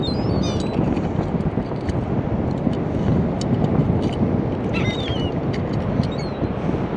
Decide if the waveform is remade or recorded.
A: recorded